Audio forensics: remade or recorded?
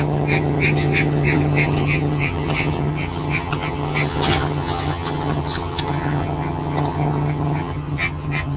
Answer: remade